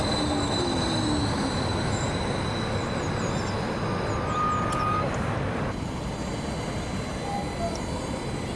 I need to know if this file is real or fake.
real